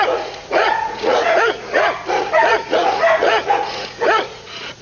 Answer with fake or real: fake